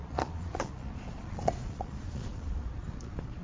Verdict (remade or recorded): remade